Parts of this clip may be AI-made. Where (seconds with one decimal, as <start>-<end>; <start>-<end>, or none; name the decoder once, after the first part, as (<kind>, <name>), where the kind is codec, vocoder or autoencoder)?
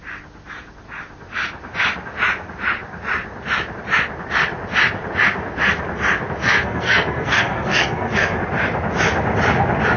6.4-8.4 (codec, SNAC)